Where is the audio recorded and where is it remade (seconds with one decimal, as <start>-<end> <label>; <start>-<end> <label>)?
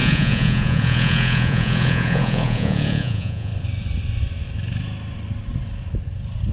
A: 0.0-3.5 remade; 3.5-6.5 recorded